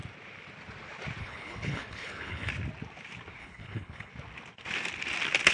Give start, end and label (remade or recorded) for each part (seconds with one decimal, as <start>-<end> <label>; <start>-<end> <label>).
0.0-1.2 recorded; 1.2-2.5 remade; 2.5-3.4 recorded; 3.4-4.1 remade; 4.1-5.5 recorded